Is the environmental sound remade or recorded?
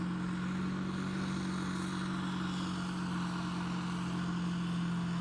recorded